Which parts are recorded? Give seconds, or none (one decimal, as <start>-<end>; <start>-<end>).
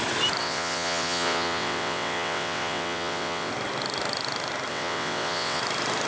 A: 0.0-0.4; 3.5-4.7; 5.6-6.1